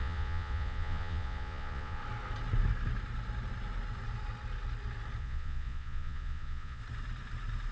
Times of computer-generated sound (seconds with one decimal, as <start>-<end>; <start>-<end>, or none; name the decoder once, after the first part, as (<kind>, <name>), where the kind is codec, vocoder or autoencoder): 0.0-2.0 (vocoder, Vocos); 5.2-6.8